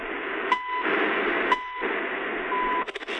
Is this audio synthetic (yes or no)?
no